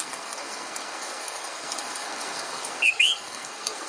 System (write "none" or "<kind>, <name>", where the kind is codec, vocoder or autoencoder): codec, SNAC